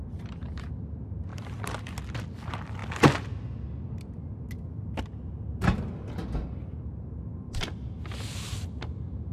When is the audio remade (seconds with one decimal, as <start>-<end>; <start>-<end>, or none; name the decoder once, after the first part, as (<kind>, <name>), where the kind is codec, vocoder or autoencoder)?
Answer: 1.3-1.8 (vocoder, BigVGAN v2)